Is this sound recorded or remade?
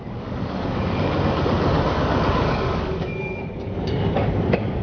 remade